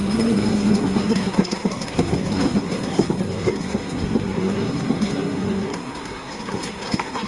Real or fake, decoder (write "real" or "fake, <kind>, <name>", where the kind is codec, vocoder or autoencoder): fake, codec, SNAC